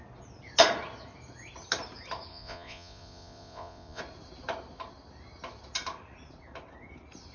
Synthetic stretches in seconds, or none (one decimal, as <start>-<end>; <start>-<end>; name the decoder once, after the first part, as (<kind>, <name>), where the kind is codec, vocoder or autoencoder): 2.3-4.0 (vocoder, Vocos)